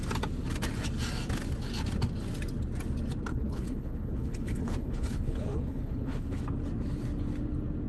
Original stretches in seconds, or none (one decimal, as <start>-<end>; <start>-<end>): 0.0-3.3; 6.4-7.9